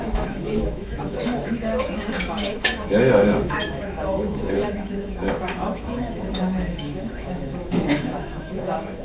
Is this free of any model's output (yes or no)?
no